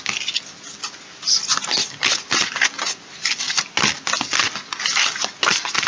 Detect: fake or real real